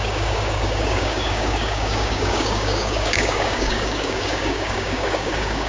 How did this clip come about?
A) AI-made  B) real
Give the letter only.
A